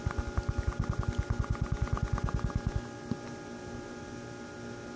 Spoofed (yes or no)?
no